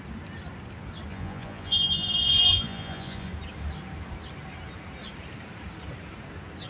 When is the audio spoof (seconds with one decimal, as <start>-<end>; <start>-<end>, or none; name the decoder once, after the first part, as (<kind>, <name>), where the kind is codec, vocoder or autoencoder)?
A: 1.1-3.3 (vocoder, Vocos)